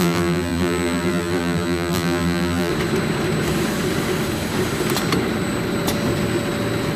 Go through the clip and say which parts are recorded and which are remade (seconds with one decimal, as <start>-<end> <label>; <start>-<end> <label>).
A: 0.0-2.7 remade; 2.7-7.0 recorded